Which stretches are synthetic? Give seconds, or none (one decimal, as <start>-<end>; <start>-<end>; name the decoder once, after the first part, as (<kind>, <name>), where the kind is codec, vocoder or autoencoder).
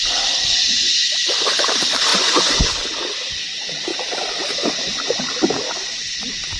2.1-2.7 (vocoder, Vocos)